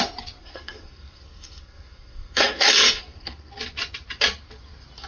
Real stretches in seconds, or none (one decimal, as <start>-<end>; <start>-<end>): 0.0-0.4; 3.5-5.1